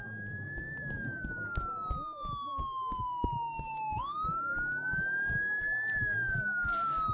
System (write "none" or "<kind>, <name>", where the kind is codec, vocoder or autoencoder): none